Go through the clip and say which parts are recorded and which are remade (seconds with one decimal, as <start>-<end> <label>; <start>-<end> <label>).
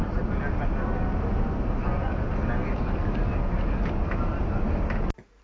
0.0-1.8 recorded; 1.8-2.3 remade; 2.3-5.4 recorded